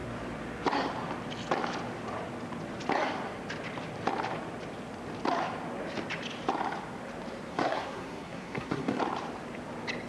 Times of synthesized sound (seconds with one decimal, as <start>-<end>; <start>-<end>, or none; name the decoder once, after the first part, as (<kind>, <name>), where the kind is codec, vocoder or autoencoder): 7.5-9.0 (codec, SNAC)